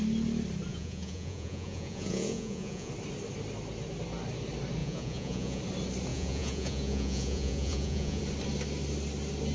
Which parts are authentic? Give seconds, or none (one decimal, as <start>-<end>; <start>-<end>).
0.0-0.7; 2.9-4.8; 5.6-6.1; 8.2-9.5